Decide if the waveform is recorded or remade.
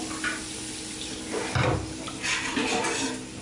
recorded